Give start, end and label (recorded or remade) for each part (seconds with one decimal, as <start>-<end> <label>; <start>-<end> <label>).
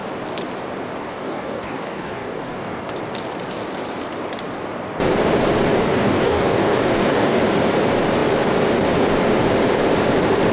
0.0-1.0 recorded; 1.0-2.9 remade; 2.9-5.7 recorded; 5.7-7.4 remade; 7.4-10.5 recorded